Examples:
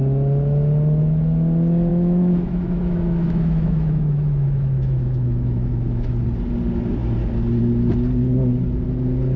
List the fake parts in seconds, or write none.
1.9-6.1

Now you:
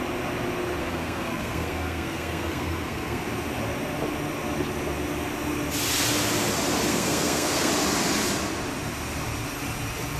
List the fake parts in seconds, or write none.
0.8-3.2; 6.9-7.7

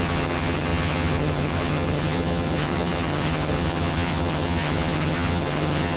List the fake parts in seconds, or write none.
0.0-6.0

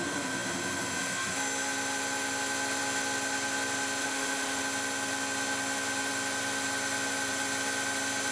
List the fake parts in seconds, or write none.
4.0-4.6

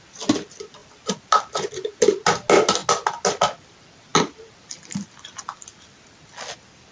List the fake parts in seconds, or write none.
none